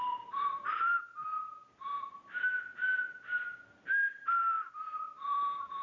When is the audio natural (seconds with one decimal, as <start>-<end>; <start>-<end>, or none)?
1.2-4.7